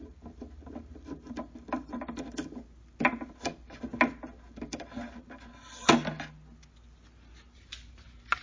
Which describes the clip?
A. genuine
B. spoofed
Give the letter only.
A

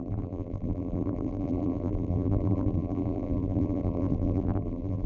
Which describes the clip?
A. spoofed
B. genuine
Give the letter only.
A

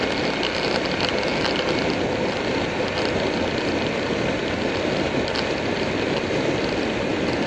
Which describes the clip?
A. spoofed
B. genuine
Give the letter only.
B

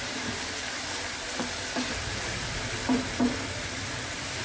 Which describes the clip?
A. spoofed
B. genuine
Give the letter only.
A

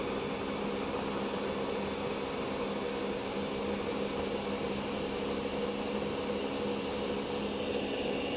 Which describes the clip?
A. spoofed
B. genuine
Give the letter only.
B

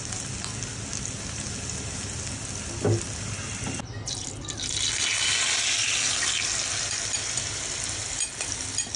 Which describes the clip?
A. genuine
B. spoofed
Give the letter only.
A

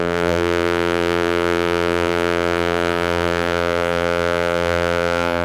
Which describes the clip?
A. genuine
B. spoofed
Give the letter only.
B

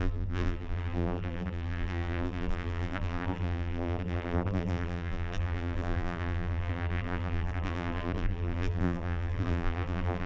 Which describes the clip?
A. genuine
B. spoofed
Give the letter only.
B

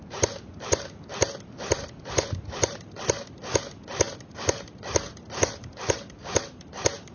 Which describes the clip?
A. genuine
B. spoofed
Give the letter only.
B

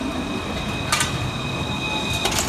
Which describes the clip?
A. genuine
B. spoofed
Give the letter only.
A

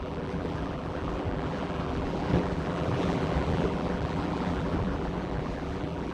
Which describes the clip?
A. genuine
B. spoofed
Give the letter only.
B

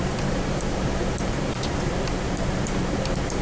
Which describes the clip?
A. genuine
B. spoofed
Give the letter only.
B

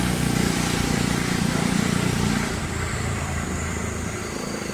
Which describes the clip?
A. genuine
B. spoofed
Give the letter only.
B